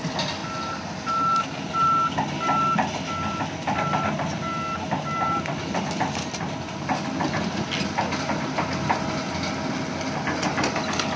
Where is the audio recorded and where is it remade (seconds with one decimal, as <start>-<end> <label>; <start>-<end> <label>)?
0.0-11.2 recorded